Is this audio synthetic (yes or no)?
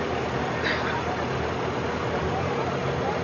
no